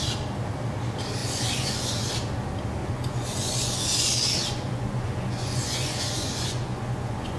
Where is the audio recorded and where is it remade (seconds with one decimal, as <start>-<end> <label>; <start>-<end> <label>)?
0.0-1.2 recorded; 1.2-2.1 remade; 2.1-2.8 recorded; 2.8-7.4 remade